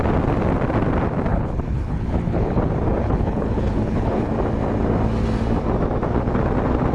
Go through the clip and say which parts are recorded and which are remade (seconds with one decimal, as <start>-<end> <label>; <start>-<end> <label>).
0.0-1.3 recorded; 1.3-2.6 remade; 2.6-3.0 recorded; 3.0-4.3 remade; 4.3-6.9 recorded